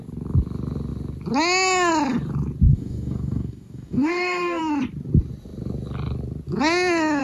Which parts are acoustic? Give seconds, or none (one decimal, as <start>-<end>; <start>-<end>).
0.0-2.7; 4.6-7.2